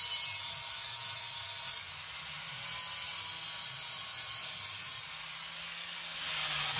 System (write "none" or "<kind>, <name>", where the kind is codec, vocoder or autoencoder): none